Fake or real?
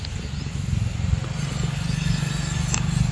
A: real